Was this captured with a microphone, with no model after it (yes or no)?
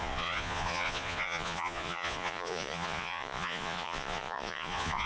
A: no